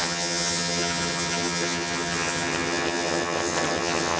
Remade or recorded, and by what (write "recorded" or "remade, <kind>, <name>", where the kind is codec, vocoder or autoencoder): remade, vocoder, HiFi-GAN